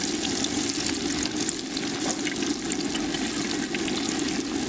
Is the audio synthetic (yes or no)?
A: no